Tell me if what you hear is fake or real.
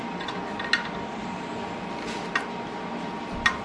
real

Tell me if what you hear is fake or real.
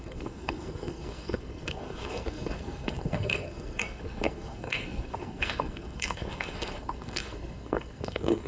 fake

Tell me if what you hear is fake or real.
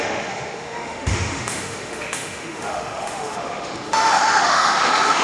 fake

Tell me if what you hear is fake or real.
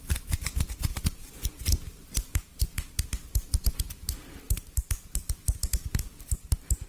real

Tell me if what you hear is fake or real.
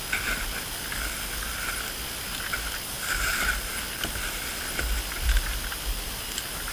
real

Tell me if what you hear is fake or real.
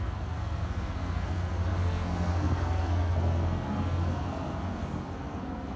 fake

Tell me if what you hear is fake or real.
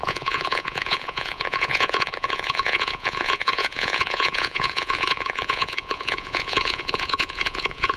fake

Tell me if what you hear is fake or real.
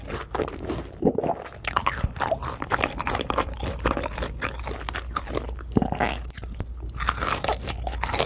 real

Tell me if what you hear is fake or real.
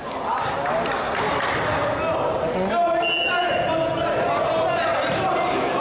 real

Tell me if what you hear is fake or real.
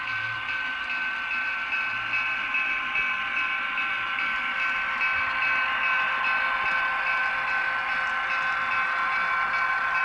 real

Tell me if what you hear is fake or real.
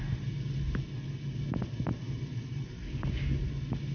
real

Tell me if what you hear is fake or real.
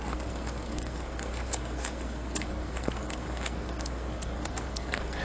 fake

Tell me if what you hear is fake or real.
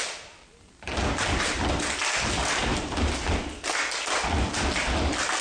real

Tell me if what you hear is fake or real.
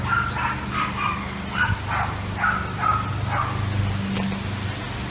real